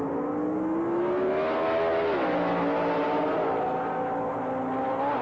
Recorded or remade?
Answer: recorded